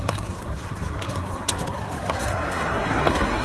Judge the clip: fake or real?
fake